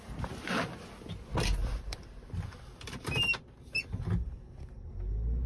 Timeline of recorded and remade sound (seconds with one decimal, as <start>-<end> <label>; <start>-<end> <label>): 0.0-1.6 recorded; 1.6-3.4 remade; 3.4-5.5 recorded